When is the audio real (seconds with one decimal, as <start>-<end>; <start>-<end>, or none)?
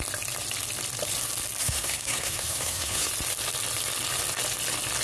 0.0-1.6; 3.1-5.0